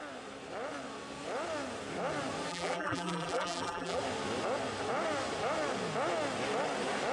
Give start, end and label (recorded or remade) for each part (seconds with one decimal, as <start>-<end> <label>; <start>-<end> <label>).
0.0-2.5 recorded; 2.5-4.0 remade; 4.0-7.1 recorded